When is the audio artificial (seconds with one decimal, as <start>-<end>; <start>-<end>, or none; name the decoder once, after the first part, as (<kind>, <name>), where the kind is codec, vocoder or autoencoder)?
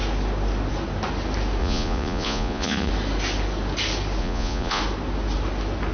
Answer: 1.6-2.9 (vocoder, Vocos); 4.2-4.8